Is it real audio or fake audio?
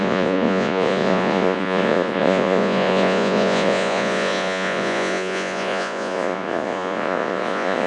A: fake